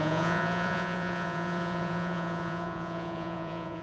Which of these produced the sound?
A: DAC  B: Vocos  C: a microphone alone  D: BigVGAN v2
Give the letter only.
B